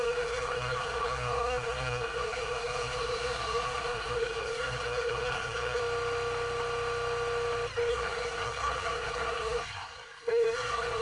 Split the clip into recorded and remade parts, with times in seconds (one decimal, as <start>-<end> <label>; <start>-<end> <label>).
0.0-5.8 remade; 5.8-7.9 recorded; 7.9-11.0 remade